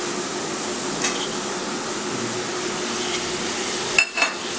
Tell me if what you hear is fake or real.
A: real